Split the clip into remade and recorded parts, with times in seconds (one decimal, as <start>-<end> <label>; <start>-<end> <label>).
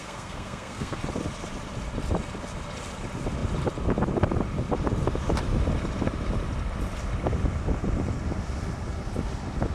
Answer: 0.0-1.0 remade; 1.0-9.7 recorded